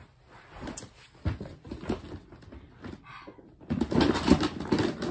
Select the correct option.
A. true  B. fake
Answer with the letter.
A